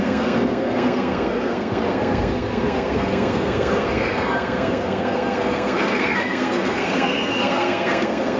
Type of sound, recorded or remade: remade